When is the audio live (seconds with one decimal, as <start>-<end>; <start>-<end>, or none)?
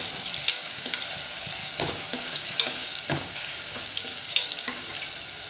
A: 0.0-0.5; 1.0-1.6; 4.9-5.5